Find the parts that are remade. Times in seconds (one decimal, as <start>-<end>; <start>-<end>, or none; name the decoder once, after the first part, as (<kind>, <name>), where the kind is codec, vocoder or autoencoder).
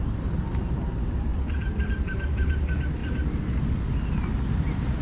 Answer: none